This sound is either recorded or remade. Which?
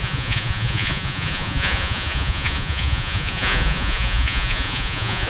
remade